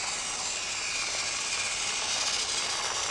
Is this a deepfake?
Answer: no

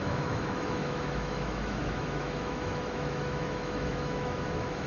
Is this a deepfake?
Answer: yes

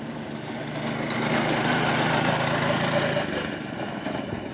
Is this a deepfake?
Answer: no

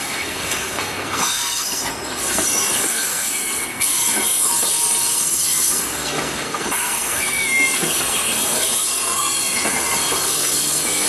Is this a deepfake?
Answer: yes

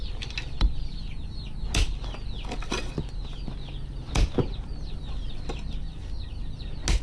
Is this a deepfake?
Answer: no